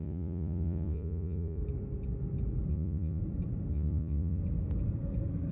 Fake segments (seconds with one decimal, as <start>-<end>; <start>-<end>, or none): 0.0-1.6; 2.7-3.2; 3.7-4.4